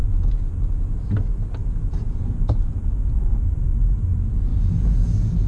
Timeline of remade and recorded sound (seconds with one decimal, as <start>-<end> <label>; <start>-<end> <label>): 0.0-0.7 remade; 0.7-1.6 recorded; 1.6-3.2 remade; 3.2-4.5 recorded; 4.5-5.5 remade